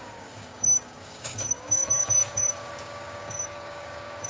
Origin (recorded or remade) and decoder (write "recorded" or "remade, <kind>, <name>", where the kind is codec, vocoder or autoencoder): remade, codec, DAC